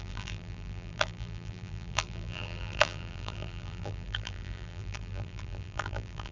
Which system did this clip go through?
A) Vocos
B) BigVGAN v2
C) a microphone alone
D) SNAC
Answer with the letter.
B